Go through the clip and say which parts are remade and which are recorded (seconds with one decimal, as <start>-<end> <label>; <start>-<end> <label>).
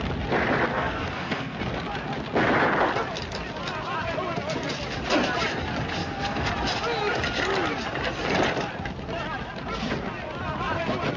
0.0-0.7 recorded; 0.7-1.6 remade; 1.6-6.0 recorded; 6.0-6.5 remade; 6.5-11.2 recorded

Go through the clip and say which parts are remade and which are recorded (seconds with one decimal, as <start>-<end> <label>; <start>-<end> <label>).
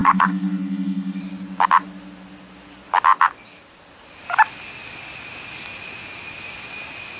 0.0-1.2 remade; 1.2-7.2 recorded